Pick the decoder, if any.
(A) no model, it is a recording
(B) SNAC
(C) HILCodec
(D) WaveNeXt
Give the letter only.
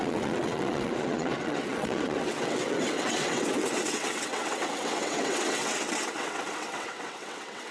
D